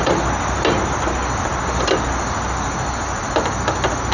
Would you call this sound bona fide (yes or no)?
yes